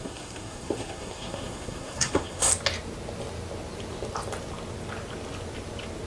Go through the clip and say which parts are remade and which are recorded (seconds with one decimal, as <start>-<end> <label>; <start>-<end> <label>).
0.0-2.5 remade; 2.5-6.1 recorded